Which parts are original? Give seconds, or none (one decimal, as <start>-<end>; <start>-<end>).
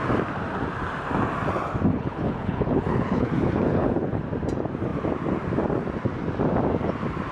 0.0-1.9; 4.2-7.3